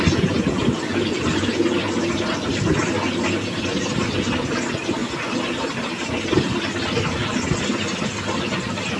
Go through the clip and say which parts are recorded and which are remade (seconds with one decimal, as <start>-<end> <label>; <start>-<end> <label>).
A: 0.0-0.6 recorded; 0.6-1.5 remade; 1.5-5.0 recorded; 5.0-8.6 remade; 8.6-9.0 recorded